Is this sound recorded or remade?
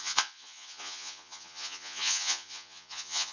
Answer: remade